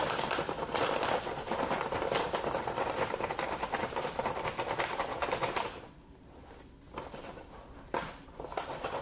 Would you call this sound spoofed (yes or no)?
yes